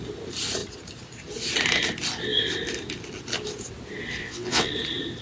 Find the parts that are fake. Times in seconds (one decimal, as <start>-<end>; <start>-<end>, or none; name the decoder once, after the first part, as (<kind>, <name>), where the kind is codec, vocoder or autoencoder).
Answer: 4.2-4.7 (vocoder, WaveNeXt)